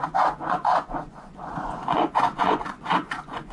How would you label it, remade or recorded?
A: remade